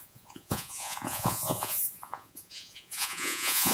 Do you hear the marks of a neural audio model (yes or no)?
yes